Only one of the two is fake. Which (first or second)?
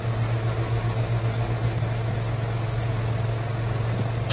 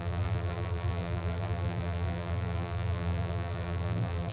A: second